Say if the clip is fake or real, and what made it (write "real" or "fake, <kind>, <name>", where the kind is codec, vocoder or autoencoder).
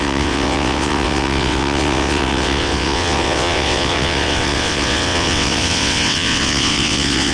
fake, vocoder, WaveNeXt